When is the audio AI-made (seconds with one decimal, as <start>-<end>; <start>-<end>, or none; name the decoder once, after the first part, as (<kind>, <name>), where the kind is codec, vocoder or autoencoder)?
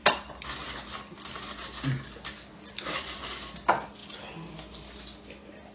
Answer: none